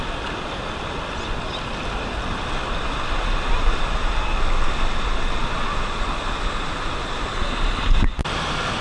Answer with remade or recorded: recorded